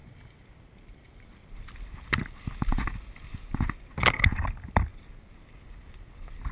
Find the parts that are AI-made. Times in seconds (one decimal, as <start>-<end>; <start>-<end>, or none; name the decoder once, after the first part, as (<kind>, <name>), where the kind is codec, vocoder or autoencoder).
none